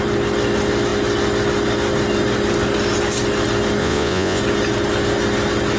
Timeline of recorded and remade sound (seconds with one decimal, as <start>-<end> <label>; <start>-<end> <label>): 0.0-3.8 recorded; 3.8-4.4 remade; 4.4-5.8 recorded